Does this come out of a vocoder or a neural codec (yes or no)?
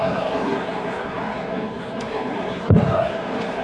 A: yes